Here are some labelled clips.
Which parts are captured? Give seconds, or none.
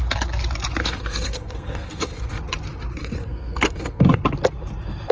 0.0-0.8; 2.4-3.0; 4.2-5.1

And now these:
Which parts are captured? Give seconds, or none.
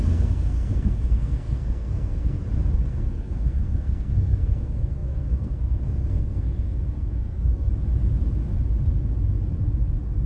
2.4-2.9; 7.7-10.3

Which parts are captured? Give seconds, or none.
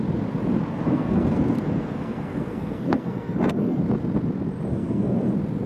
0.0-0.7; 3.8-4.7; 5.3-5.7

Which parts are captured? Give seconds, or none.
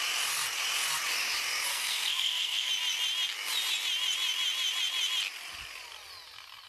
0.0-1.7; 2.7-6.7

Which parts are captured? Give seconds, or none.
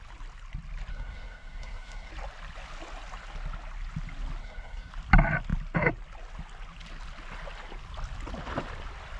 0.0-0.9; 2.1-4.4; 4.9-9.2